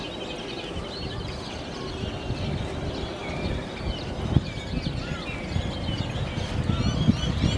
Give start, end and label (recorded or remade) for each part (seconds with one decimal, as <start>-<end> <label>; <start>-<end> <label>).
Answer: 0.0-7.6 recorded